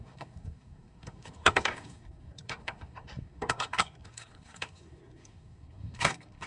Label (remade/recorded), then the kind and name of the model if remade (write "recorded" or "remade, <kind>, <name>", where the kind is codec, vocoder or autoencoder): remade, codec, SNAC